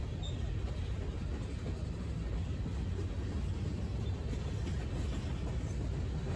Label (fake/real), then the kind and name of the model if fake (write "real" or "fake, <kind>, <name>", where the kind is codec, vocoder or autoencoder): real